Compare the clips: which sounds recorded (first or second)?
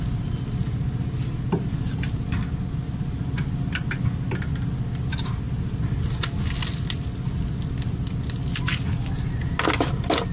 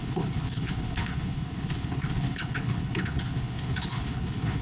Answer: first